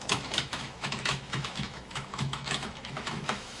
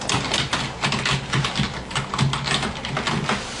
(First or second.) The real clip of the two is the second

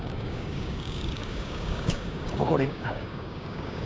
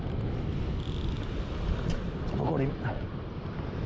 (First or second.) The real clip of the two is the second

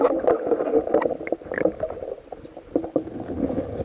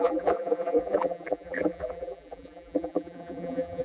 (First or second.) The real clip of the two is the first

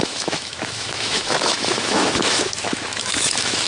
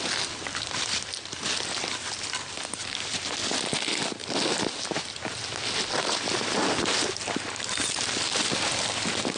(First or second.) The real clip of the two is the second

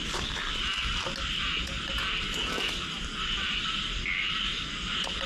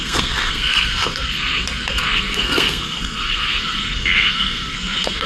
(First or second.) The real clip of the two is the first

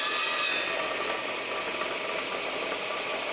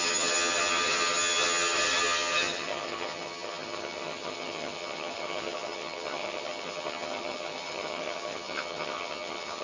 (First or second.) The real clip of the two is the first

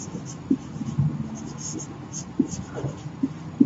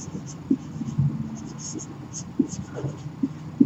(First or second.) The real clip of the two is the second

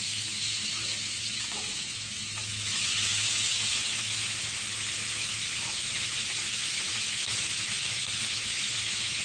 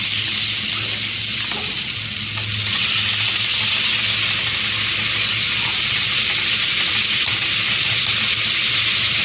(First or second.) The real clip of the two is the second